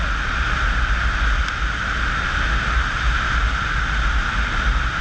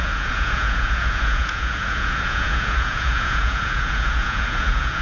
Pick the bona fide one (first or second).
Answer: first